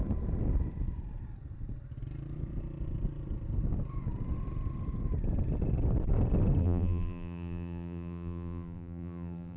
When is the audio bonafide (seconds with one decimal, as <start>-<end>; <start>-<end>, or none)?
0.0-6.6